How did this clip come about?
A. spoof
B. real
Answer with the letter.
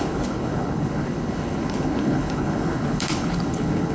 A